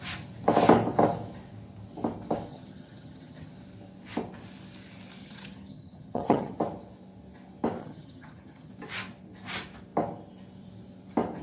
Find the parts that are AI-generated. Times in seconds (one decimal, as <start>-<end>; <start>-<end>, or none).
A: 2.5-3.5; 5.2-6.6; 7.8-8.7

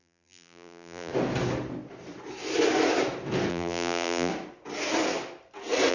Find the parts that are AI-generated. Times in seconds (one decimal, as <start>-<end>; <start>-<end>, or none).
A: 0.0-1.1; 3.5-4.3

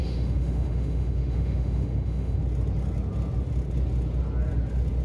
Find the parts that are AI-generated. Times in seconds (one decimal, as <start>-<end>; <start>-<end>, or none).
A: 0.0-2.4

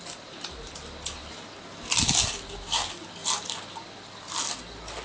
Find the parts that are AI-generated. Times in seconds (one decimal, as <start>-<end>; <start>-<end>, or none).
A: none

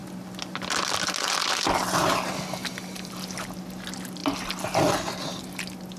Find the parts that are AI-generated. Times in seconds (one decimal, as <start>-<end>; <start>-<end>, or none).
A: none

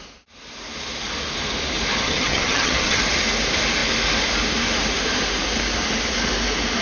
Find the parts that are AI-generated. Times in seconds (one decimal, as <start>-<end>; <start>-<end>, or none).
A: 2.0-3.0